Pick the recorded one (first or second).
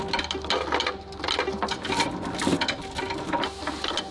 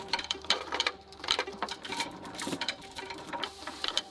first